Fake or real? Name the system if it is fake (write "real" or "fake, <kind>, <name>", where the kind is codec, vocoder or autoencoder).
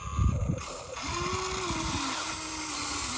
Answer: real